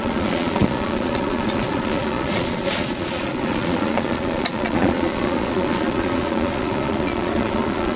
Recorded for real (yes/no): no